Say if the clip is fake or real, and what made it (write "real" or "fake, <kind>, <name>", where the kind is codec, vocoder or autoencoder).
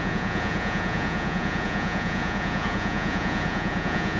fake, vocoder, Vocos